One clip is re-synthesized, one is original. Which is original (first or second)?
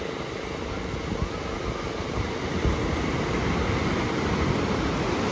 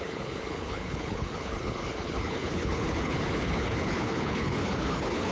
first